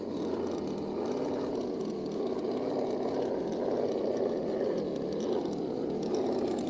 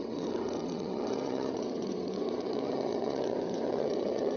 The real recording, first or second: first